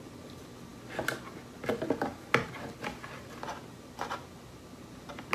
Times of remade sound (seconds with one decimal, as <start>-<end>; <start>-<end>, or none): none